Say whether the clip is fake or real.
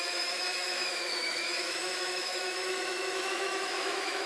fake